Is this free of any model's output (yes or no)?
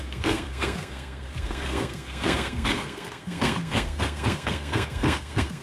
no